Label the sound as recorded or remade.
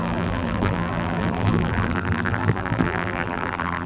remade